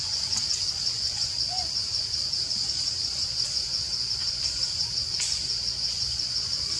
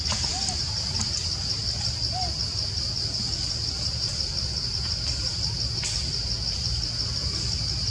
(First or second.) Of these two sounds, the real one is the second